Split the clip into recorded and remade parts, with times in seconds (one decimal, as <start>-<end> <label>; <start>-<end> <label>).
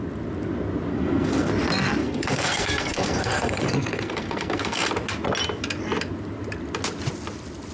0.0-0.9 recorded; 0.9-1.5 remade; 1.5-2.0 recorded; 2.0-4.9 remade; 4.9-7.7 recorded